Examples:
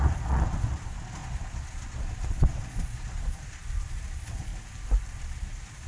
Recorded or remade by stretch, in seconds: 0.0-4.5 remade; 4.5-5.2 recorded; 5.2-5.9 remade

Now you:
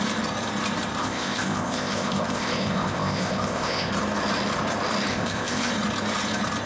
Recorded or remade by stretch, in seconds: 0.0-1.0 recorded; 1.0-3.9 remade; 3.9-5.1 recorded; 5.1-5.7 remade; 5.7-6.7 recorded

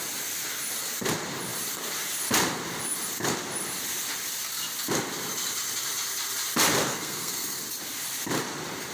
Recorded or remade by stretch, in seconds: 0.0-6.9 recorded; 6.9-7.6 remade; 7.6-8.9 recorded

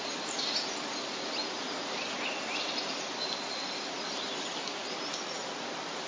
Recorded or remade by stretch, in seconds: 0.0-6.1 recorded

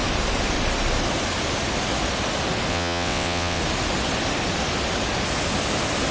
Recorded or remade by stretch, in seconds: 0.0-2.7 recorded; 2.7-3.6 remade; 3.6-6.1 recorded

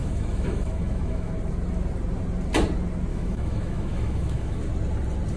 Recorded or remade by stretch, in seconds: 0.0-1.3 remade; 1.3-3.1 recorded; 3.1-4.6 remade; 4.6-5.4 recorded